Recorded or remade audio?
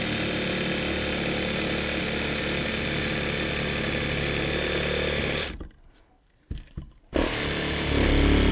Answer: recorded